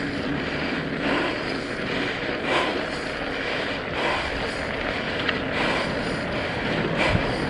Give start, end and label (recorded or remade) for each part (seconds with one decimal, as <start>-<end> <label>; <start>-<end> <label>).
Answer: 0.0-7.5 recorded